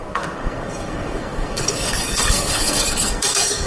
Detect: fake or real fake